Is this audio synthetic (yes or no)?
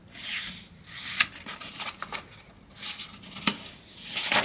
no